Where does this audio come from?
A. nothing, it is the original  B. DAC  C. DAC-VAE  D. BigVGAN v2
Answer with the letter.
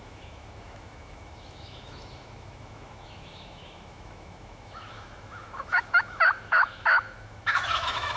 C